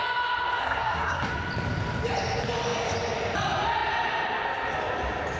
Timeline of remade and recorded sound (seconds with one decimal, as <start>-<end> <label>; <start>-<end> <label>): 0.0-0.6 recorded; 0.6-1.3 remade; 1.3-5.4 recorded